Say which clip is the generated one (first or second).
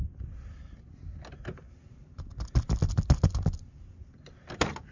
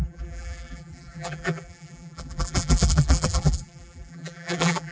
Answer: second